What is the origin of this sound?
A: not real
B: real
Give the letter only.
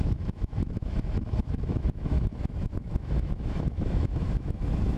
A